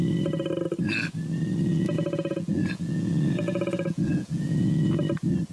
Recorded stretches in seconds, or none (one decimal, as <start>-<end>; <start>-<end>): 0.0-1.7; 5.0-5.5